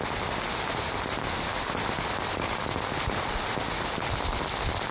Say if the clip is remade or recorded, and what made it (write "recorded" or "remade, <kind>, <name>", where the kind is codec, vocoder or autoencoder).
recorded